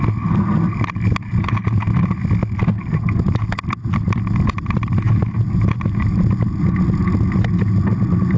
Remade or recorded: recorded